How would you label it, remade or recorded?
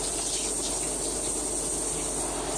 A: recorded